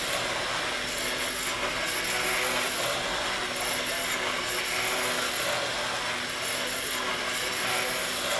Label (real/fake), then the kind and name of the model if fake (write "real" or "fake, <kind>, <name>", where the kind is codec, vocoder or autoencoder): real